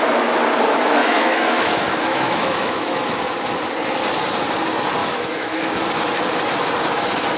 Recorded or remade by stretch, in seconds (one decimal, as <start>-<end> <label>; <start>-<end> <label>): 0.0-1.0 recorded; 1.0-3.2 remade; 3.2-5.0 recorded; 5.0-5.8 remade; 5.8-7.4 recorded